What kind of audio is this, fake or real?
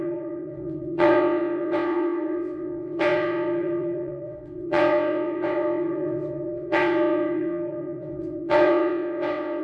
fake